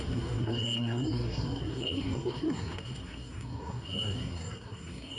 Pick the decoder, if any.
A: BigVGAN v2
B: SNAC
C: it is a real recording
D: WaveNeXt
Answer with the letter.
B